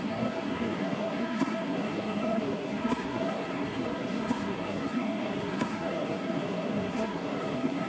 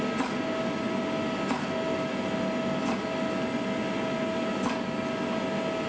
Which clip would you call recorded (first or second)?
second